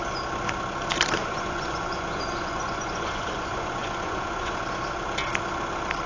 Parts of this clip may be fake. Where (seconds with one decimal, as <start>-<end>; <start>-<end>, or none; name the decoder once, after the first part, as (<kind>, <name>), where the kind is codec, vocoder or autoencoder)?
1.2-4.6 (vocoder, Vocos)